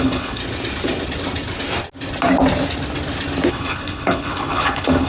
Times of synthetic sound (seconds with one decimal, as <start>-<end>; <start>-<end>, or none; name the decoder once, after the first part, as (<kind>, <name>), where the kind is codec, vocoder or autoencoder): 0.0-0.4 (codec, HILCodec); 3.5-5.1